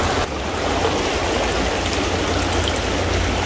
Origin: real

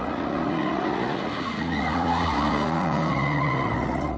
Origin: fake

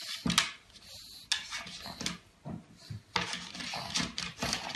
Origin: real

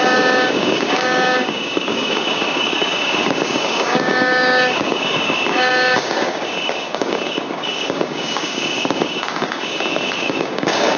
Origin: fake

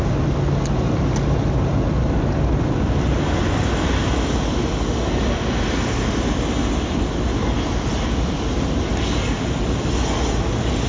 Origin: real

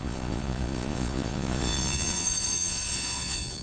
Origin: fake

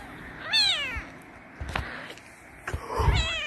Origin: real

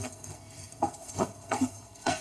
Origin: fake